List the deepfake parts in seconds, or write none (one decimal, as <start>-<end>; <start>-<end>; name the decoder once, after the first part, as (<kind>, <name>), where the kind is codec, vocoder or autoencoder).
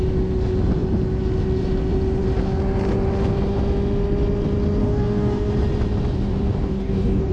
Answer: 4.8-5.5 (codec, DAC); 6.5-7.3